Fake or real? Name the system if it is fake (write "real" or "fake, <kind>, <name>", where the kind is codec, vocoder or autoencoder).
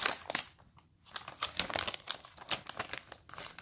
fake, vocoder, BigVGAN v2